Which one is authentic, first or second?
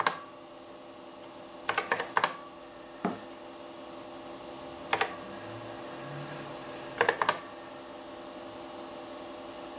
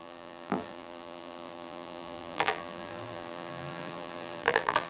first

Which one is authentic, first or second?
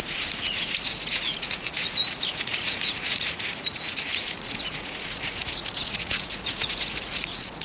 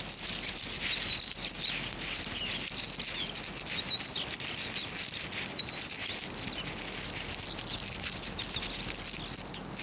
second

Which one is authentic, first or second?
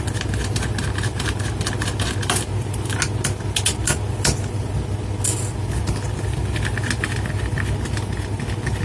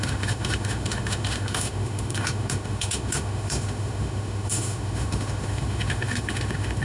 first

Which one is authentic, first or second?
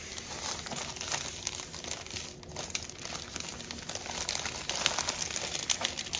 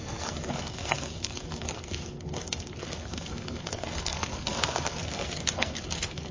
first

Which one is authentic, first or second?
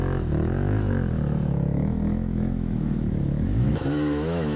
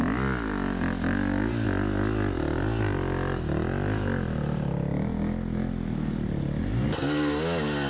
second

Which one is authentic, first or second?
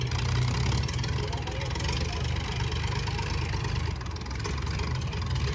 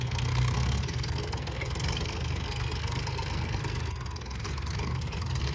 first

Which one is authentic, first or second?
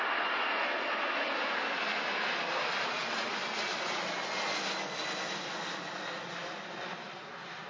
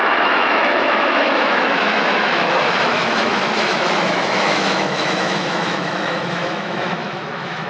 first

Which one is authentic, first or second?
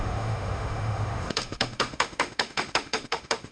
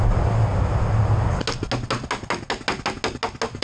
second